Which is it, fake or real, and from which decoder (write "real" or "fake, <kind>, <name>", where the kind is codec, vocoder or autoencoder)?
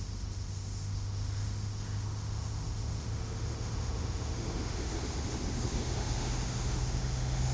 fake, autoencoder, DAC-VAE